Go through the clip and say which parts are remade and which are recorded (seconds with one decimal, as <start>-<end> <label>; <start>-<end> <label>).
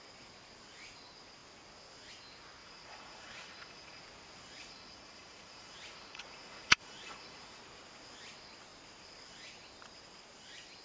0.0-2.6 recorded; 2.6-4.0 remade; 4.0-4.6 recorded; 4.6-7.6 remade; 7.6-10.8 recorded